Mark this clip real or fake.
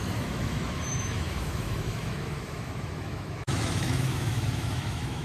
fake